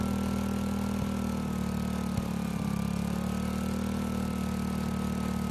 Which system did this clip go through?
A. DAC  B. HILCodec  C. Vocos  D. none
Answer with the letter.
D